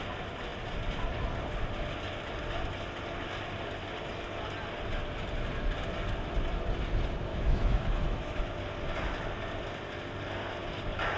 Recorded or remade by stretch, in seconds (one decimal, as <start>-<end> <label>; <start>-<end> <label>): 0.0-7.3 recorded; 7.3-8.4 remade; 8.4-11.2 recorded